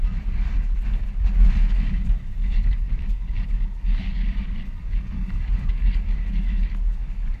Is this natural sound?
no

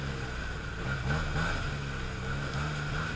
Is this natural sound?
yes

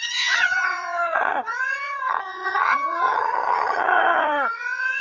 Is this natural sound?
no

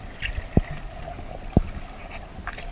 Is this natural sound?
yes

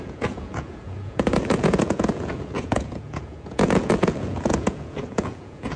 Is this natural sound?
no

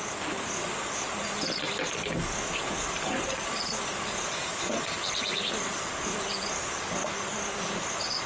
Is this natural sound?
yes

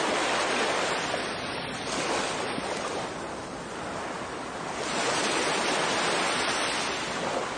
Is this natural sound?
yes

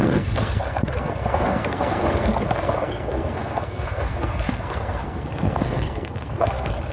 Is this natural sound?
no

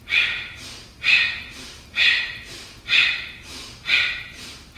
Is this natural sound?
yes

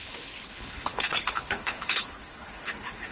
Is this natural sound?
no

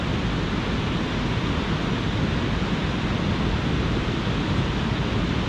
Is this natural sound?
yes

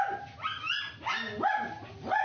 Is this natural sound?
yes